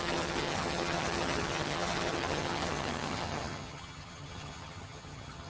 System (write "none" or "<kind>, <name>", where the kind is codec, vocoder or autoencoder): vocoder, HiFi-GAN